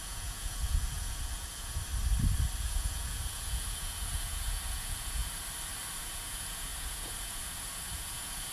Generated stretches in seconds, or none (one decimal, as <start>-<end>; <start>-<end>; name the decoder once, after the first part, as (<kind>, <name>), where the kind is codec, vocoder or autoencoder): 0.0-1.9 (vocoder, Vocos); 2.6-5.2; 6.0-8.5